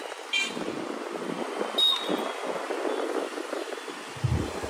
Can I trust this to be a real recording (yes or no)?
yes